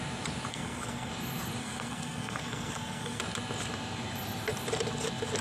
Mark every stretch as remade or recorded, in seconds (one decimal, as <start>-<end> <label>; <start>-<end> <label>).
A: 0.0-0.5 recorded; 0.5-1.1 remade; 1.1-1.6 recorded; 1.6-3.2 remade; 3.2-5.4 recorded